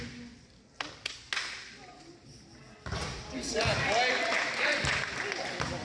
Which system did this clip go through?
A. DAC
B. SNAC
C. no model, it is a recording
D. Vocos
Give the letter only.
C